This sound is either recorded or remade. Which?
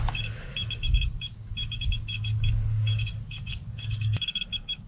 remade